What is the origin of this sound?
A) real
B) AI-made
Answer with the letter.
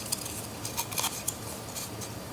A